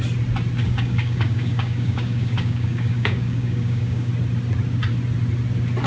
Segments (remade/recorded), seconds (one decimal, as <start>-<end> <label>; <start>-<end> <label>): 0.0-0.6 recorded; 0.6-4.1 remade; 4.1-5.9 recorded